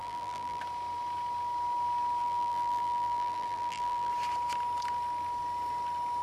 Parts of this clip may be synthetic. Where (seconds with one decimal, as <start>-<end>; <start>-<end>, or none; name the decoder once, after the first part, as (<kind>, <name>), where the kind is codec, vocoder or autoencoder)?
0.0-0.6 (vocoder, BigVGAN v2); 2.2-4.1